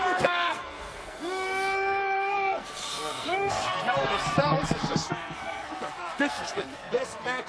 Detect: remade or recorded remade